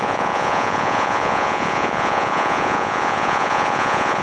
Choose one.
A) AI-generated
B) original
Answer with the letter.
A